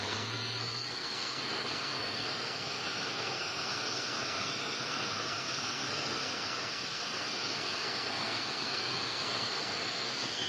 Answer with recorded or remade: remade